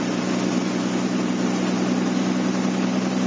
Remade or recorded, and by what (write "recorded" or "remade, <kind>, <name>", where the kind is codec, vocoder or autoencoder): recorded